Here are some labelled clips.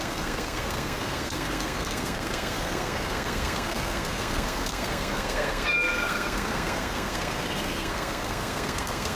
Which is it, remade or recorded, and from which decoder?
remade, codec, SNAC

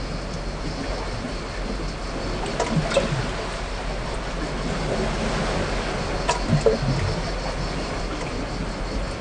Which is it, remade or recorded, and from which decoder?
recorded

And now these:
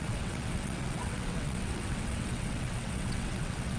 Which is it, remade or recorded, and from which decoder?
remade, vocoder, WaveNeXt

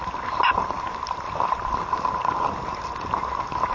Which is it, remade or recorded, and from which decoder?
recorded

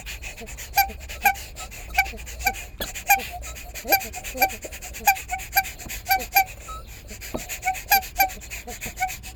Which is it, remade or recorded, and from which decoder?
recorded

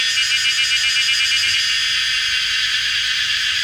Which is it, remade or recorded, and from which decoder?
recorded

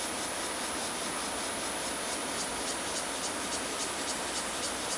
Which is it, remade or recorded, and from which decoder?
recorded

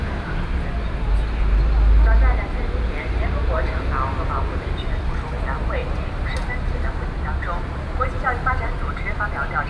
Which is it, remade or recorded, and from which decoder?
recorded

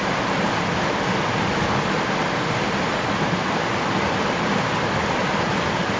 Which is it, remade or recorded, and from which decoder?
recorded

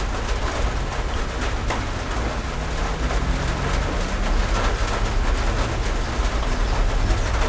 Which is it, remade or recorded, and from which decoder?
recorded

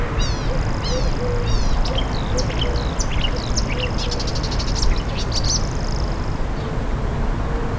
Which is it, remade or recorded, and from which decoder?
recorded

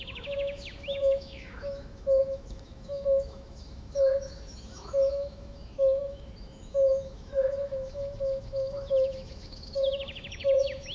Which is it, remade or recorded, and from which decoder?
remade, autoencoder, DAC-VAE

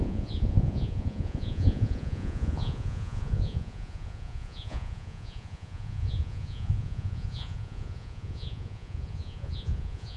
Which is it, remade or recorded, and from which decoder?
remade, vocoder, Vocos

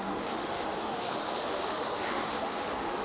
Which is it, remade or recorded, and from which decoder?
remade, autoencoder, DAC-VAE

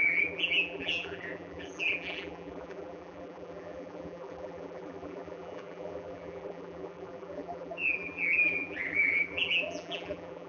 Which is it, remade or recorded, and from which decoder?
remade, vocoder, BigVGAN v2